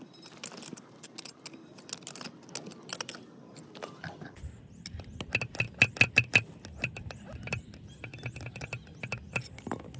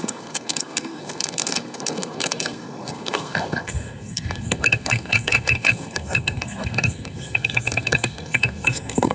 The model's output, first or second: second